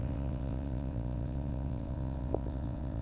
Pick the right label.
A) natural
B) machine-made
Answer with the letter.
B